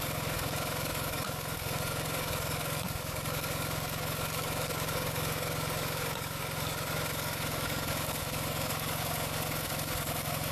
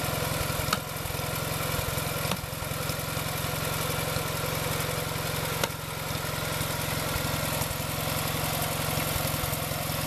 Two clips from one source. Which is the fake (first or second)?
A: first